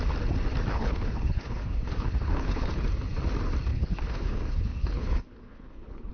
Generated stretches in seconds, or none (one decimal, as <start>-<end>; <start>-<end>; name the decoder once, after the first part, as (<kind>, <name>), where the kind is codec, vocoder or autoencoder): 0.7-2.7 (codec, HILCodec); 3.7-6.1